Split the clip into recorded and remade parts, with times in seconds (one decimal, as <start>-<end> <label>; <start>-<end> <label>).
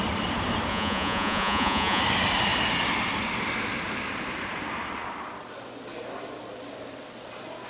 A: 0.0-0.7 recorded; 0.7-2.0 remade; 2.0-7.7 recorded